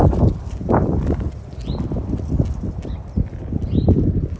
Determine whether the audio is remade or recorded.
recorded